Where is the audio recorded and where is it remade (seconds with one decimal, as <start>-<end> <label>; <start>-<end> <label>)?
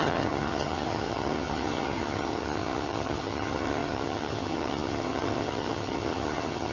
0.0-6.7 remade